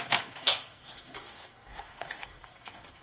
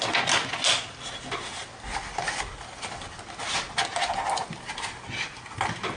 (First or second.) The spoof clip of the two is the first